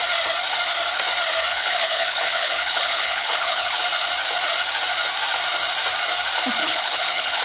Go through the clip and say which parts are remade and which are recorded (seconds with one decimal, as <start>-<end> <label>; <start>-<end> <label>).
0.0-1.5 recorded; 1.5-3.8 remade; 3.8-6.6 recorded; 6.6-7.4 remade